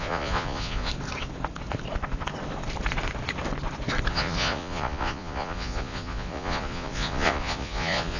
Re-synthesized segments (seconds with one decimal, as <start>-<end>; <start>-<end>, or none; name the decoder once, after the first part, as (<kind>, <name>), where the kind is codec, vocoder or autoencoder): 0.0-0.9 (vocoder, Vocos); 4.1-8.2